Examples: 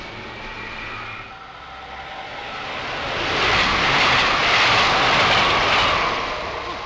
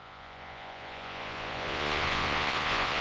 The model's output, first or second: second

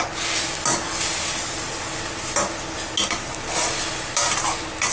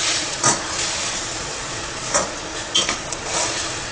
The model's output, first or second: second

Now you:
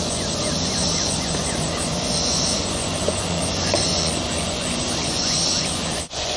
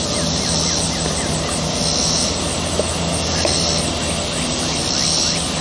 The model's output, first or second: first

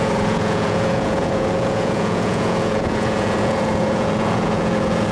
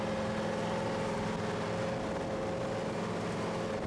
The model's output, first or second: first